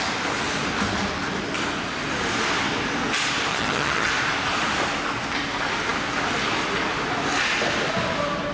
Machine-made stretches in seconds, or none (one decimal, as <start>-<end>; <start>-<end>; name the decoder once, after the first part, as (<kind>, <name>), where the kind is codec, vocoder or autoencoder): 3.5-4.1 (vocoder, HiFi-GAN)